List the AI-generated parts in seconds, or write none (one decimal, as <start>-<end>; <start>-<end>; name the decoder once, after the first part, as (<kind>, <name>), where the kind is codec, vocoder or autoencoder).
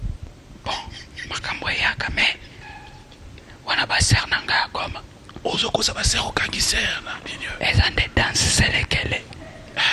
5.6-7.7 (vocoder, BigVGAN v2)